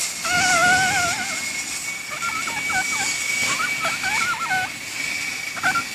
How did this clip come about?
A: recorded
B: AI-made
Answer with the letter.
A